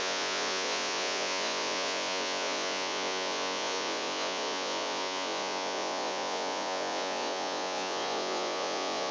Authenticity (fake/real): fake